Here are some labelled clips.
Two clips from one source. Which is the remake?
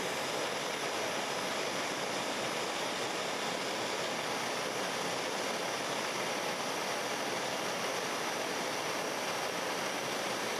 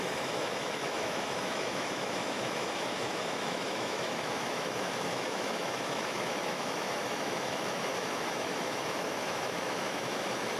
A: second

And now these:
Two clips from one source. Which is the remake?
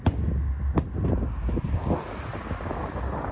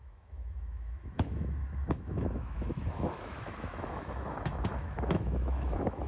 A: second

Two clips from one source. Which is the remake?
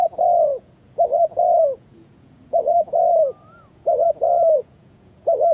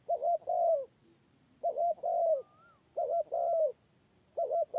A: first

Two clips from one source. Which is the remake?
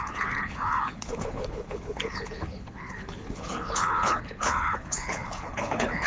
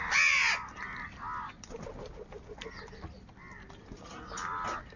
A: first